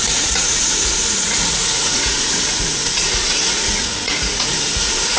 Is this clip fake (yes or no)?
yes